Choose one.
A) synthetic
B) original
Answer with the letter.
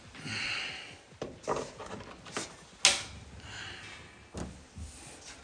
B